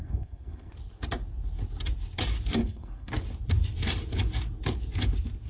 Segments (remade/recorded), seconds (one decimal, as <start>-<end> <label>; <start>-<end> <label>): 0.0-0.7 remade; 0.7-2.6 recorded; 2.6-3.1 remade; 3.1-5.5 recorded